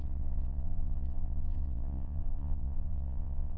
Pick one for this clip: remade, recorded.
remade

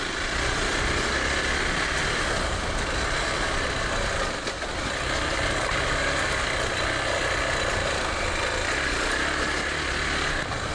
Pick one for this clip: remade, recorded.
recorded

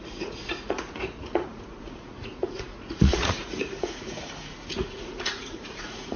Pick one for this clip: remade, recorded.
remade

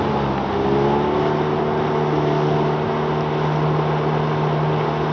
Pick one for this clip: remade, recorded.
recorded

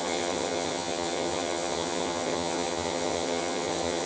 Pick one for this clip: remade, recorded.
remade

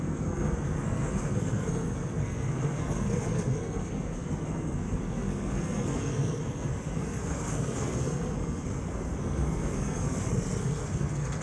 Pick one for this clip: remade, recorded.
remade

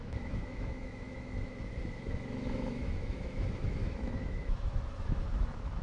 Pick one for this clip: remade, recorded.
remade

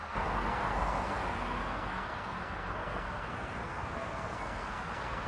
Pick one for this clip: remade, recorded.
remade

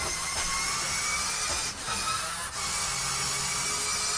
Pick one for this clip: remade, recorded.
recorded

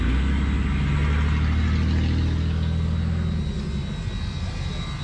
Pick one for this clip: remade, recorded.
recorded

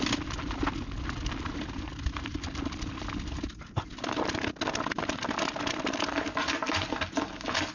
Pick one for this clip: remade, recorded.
recorded